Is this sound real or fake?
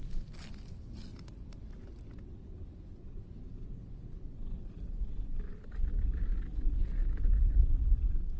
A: real